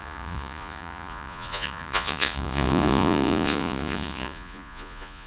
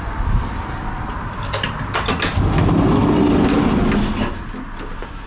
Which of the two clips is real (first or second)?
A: second